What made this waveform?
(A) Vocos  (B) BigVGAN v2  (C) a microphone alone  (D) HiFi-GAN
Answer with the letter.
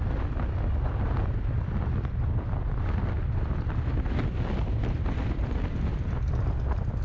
C